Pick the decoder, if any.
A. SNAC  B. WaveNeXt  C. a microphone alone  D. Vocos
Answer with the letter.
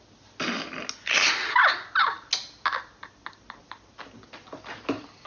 C